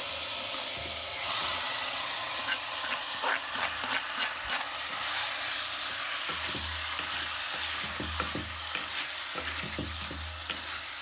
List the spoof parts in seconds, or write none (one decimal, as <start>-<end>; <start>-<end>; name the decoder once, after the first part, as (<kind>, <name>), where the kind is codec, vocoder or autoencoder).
1.1-2.4 (vocoder, WaveNeXt)